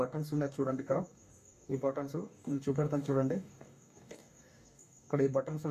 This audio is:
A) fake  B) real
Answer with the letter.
A